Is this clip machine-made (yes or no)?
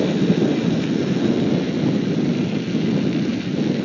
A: no